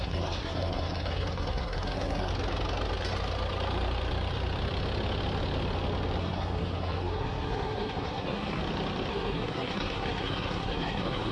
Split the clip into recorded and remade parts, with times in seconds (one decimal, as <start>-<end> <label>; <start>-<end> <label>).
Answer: 0.0-2.3 remade; 2.3-6.2 recorded; 6.2-8.6 remade; 8.6-9.1 recorded; 9.1-11.3 remade